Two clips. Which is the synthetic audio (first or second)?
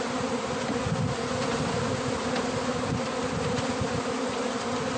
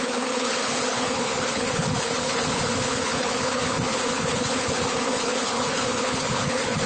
second